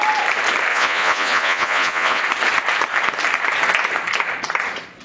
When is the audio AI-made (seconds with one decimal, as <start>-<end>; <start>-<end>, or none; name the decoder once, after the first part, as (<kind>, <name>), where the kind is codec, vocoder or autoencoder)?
0.7-2.2 (vocoder, Vocos)